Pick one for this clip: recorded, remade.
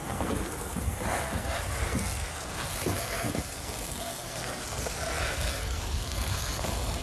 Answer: remade